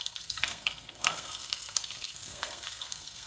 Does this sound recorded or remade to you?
remade